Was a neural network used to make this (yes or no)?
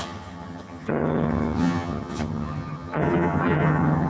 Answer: yes